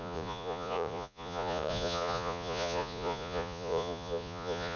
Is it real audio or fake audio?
fake